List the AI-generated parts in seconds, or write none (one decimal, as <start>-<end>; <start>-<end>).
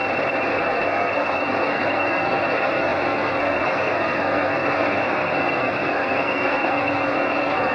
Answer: 0.5-7.7